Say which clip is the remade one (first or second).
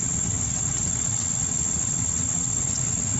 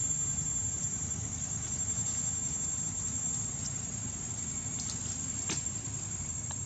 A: first